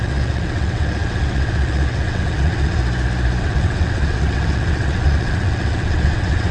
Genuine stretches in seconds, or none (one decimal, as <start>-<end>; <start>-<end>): 2.8-3.4